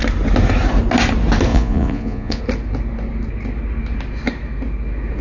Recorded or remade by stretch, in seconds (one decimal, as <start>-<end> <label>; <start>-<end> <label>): 0.0-1.5 recorded; 1.5-2.4 remade; 2.4-5.2 recorded